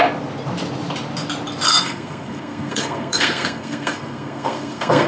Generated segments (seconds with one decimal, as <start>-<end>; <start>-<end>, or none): 1.7-5.1